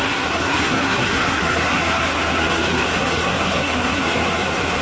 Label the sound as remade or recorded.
remade